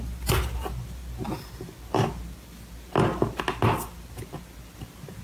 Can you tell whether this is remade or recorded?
recorded